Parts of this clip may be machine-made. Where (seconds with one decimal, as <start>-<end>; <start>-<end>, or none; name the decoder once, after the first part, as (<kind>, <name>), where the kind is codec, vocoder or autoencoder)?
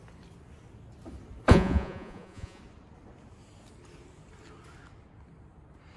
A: 1.5-2.6 (vocoder, Vocos)